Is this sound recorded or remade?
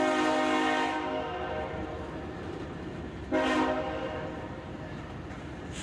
remade